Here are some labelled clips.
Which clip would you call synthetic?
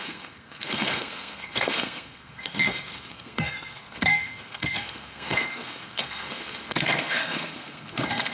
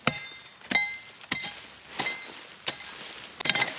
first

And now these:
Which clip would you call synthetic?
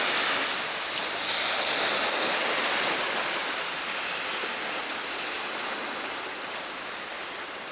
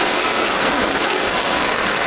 second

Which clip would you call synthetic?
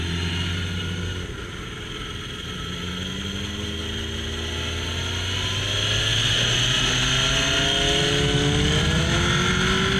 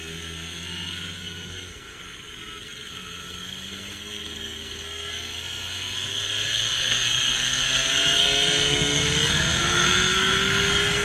second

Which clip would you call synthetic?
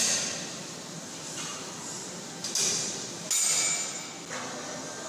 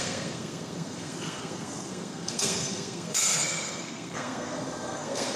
second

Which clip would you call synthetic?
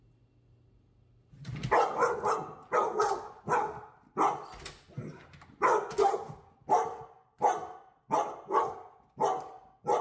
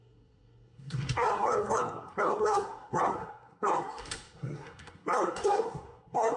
second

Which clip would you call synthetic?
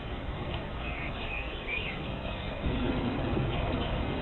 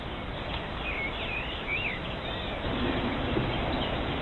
first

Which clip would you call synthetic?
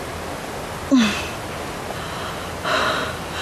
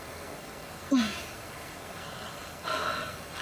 second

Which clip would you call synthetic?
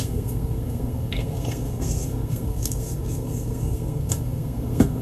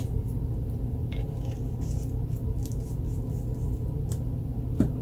first